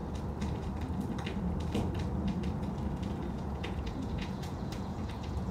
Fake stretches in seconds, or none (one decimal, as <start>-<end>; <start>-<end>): 3.3-5.5